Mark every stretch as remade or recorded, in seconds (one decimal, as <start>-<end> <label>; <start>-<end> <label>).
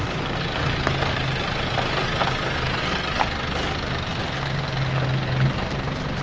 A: 0.0-6.2 recorded